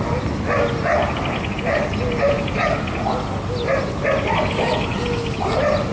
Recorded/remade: recorded